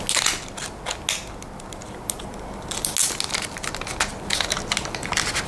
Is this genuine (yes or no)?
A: yes